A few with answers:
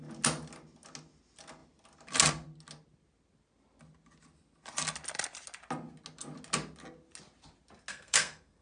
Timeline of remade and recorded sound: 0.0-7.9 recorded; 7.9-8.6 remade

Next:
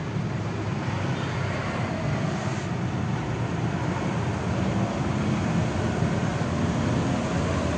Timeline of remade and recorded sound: 0.0-7.8 recorded

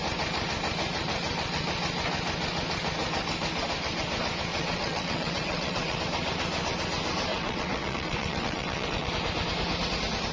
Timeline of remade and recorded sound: 0.0-4.5 recorded; 4.5-6.0 remade; 6.0-7.3 recorded; 7.3-9.1 remade; 9.1-10.3 recorded

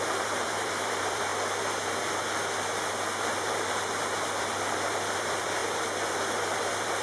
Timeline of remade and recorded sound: 0.0-1.3 remade; 1.3-4.6 recorded; 4.6-5.6 remade; 5.6-6.6 recorded; 6.6-7.0 remade

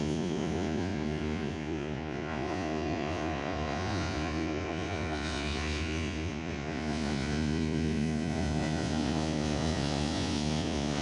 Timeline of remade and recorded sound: 0.0-11.0 remade

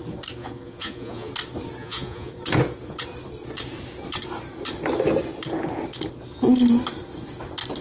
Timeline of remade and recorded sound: 0.0-0.4 recorded; 0.4-1.3 remade; 1.3-1.8 recorded; 1.8-2.3 remade; 2.3-7.8 recorded

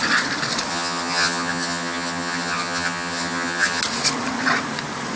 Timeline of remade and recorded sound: 0.0-0.7 recorded; 0.7-3.8 remade; 3.8-5.2 recorded